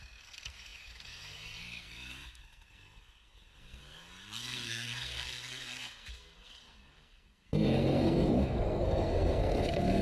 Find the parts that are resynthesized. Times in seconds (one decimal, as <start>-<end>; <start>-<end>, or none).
0.0-10.0